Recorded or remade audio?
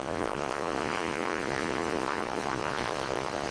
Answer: remade